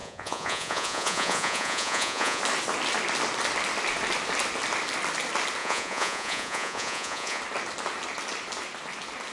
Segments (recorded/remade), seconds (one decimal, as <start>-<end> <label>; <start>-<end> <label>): 0.0-2.4 remade; 2.4-5.6 recorded; 5.6-7.4 remade; 7.4-9.3 recorded